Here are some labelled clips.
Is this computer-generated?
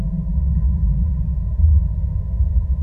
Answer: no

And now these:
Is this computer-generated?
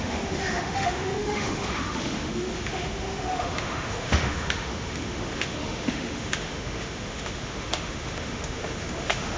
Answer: yes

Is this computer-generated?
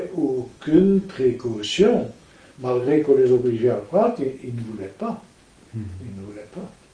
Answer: yes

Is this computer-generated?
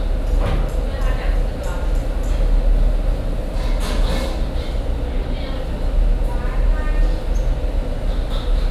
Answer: no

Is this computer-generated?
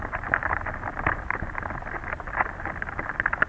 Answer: no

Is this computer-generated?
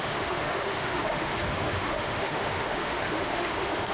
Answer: yes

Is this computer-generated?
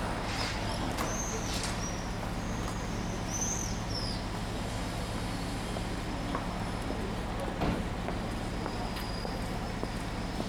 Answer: no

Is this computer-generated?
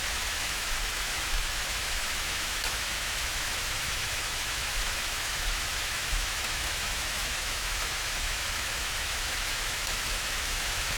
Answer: yes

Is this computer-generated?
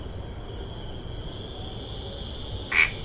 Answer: no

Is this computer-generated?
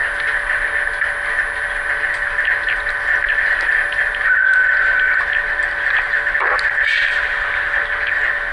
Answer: no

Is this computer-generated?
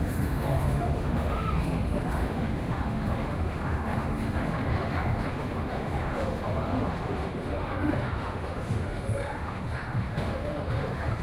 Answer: yes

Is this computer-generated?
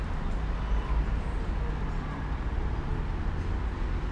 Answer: no